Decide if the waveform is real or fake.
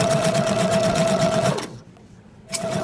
fake